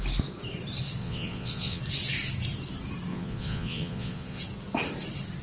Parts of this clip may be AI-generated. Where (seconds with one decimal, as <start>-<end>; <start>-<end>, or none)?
1.0-1.8; 3.1-4.4